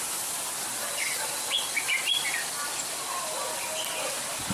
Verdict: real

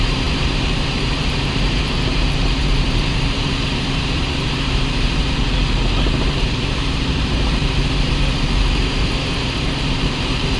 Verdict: fake